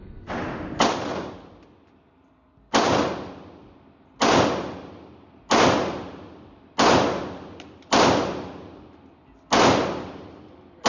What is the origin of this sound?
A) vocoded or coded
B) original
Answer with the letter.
B